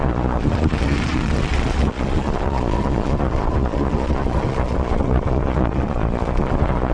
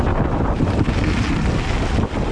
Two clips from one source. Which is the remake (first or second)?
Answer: first